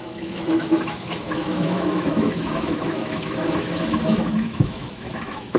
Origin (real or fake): fake